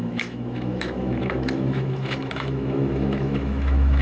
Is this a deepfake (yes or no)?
yes